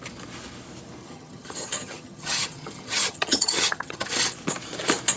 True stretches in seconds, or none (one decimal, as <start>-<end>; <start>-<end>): 0.0-1.0; 4.1-5.2